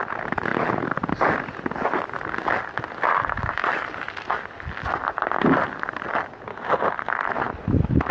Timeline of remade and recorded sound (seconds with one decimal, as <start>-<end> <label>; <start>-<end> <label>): 0.0-6.5 recorded; 6.5-7.1 remade; 7.1-8.1 recorded